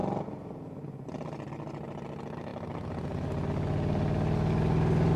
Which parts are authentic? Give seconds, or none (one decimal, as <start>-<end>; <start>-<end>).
0.0-5.2